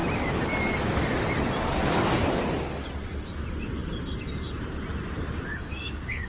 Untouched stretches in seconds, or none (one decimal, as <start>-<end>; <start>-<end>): 0.0-5.5